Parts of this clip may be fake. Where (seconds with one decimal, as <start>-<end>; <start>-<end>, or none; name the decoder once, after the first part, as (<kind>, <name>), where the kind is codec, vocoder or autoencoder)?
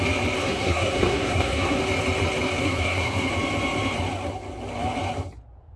0.4-1.8 (codec, SNAC); 2.6-3.3